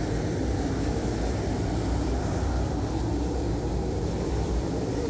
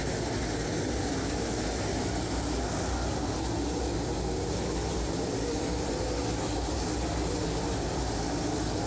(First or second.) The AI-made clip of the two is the first